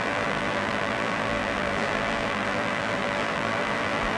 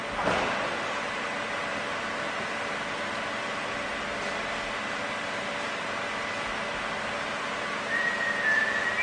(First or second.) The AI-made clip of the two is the first